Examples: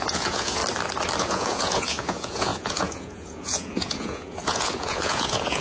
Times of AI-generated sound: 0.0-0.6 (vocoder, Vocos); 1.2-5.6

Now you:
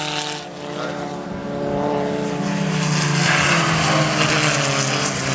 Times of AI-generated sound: none

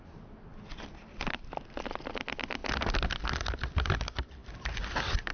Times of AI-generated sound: 0.5-2.1 (vocoder, BigVGAN v2)

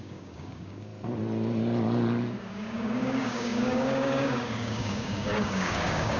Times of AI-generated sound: 0.0-0.9 (codec, DAC); 2.4-6.2

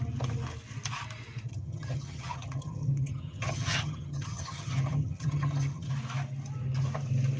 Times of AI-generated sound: 1.5-5.9 (vocoder, HiFi-GAN)

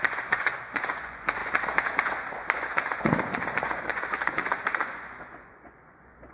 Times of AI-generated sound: 0.0-6.3 (vocoder, Vocos)

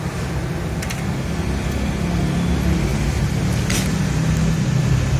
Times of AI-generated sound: none

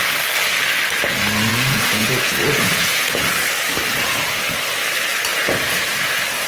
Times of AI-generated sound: 1.5-3.2 (vocoder, Vocos); 5.3-6.5